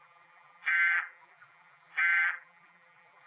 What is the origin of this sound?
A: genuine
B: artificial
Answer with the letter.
B